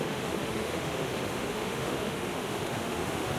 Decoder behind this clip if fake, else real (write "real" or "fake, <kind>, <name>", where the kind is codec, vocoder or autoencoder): fake, autoencoder, DAC-VAE